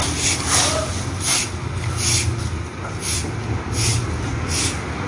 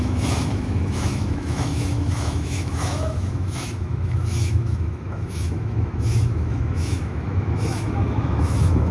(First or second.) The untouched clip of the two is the first